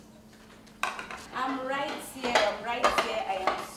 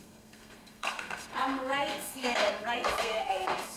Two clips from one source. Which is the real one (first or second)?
first